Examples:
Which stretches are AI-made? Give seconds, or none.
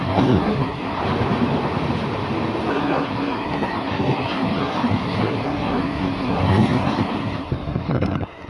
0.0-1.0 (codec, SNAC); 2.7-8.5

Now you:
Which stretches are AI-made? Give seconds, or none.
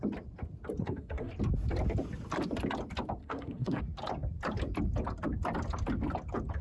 0.8-1.3 (codec, SNAC); 3.2-3.8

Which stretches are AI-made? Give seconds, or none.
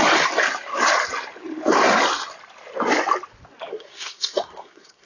3.7-5.1 (codec, SNAC)